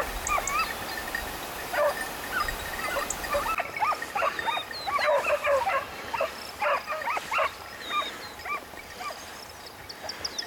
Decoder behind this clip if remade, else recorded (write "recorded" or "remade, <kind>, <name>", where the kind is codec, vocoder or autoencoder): recorded